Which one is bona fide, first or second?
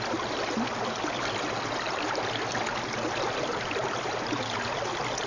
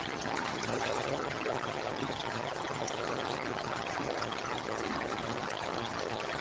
first